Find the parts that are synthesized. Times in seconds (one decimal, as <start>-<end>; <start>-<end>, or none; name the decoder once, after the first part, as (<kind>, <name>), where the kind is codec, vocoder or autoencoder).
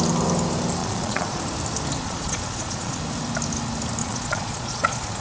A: 0.8-1.4 (vocoder, Vocos); 2.0-3.0; 4.0-5.2